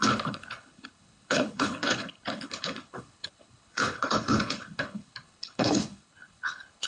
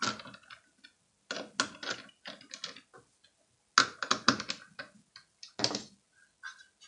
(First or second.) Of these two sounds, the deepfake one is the first